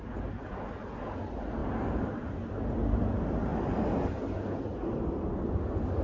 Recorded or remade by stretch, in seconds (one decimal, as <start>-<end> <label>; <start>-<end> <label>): 0.0-6.0 recorded